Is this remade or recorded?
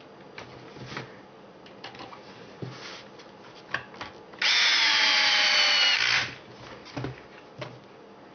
recorded